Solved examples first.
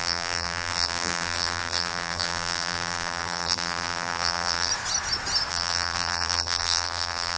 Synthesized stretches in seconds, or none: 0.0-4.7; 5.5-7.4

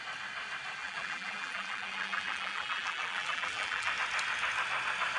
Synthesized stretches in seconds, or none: 0.8-3.9

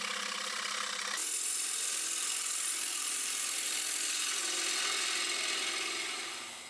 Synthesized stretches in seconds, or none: 1.2-4.4

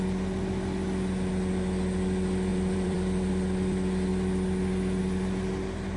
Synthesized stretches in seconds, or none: 2.5-3.3

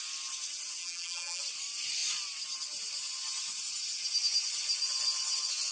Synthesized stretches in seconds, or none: 0.8-1.4